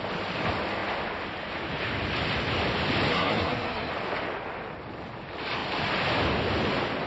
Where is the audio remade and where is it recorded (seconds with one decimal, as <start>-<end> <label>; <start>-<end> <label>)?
0.0-3.1 recorded; 3.1-3.9 remade; 3.9-7.1 recorded